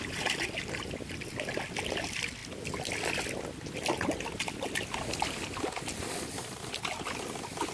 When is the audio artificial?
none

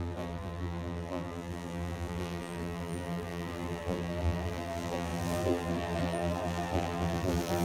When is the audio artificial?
0.0-7.6 (vocoder, BigVGAN v2)

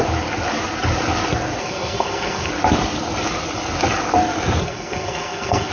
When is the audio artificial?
1.6-2.5 (codec, SNAC); 4.6-5.7

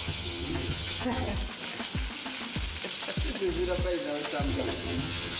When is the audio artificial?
0.0-1.3 (vocoder, HiFi-GAN); 4.5-5.4

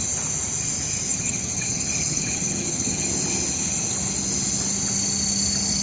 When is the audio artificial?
1.1-3.1 (vocoder, HiFi-GAN)